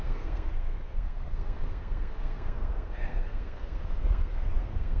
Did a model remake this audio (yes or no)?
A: yes